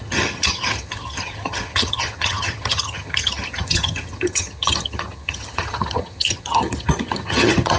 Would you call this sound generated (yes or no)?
yes